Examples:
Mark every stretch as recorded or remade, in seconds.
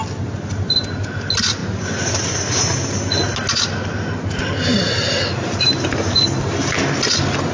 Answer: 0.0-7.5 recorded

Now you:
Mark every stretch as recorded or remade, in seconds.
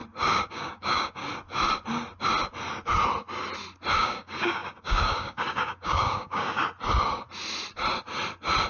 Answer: 0.0-0.5 recorded; 0.5-1.2 remade; 1.2-4.0 recorded; 4.0-6.6 remade; 6.6-8.7 recorded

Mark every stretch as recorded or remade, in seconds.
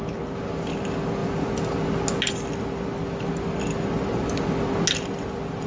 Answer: 0.0-5.7 recorded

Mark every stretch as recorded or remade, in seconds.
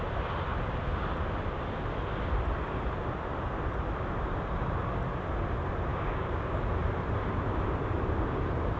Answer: 0.0-5.9 recorded; 5.9-6.6 remade; 6.6-8.8 recorded